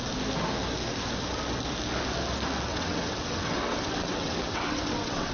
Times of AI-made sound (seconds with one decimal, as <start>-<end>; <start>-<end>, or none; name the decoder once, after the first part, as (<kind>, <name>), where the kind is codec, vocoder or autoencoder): 2.7-5.3 (vocoder, WaveNeXt)